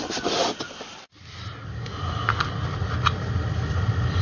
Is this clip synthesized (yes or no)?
no